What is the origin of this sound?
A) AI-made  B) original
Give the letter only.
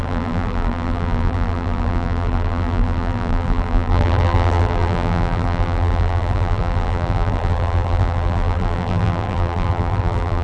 A